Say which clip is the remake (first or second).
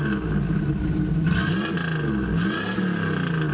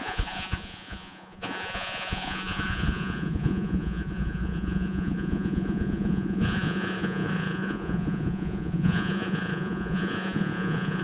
second